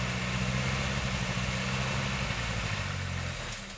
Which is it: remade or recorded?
recorded